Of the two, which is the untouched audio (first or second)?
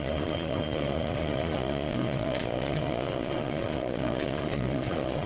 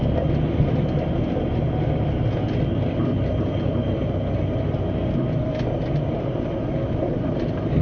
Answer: second